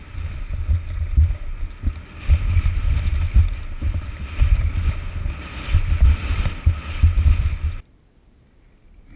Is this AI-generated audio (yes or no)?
no